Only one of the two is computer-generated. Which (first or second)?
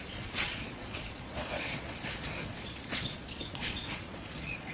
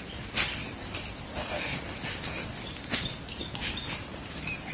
first